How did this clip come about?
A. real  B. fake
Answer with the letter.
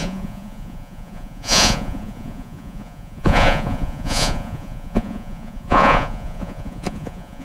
B